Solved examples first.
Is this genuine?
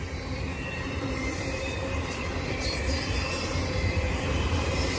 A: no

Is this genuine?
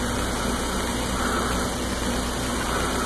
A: yes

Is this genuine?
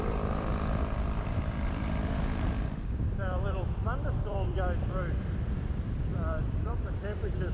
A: no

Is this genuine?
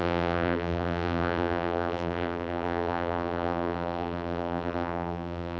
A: no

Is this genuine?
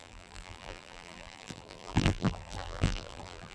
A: no